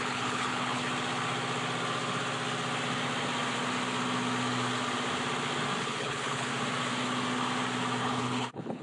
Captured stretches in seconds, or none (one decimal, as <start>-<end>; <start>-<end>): 0.8-5.8; 6.5-8.0